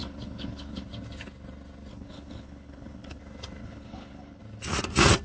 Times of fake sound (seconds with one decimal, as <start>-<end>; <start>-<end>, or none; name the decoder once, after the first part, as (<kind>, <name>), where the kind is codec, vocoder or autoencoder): 0.0-0.9 (codec, HILCodec); 1.9-3.2; 3.6-4.4